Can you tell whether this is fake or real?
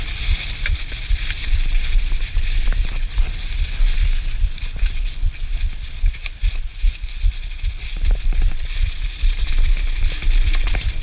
real